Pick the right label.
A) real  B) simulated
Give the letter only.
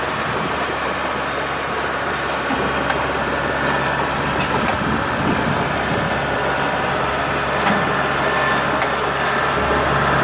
A